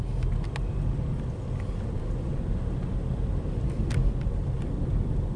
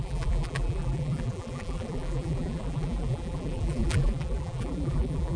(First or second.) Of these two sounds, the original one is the first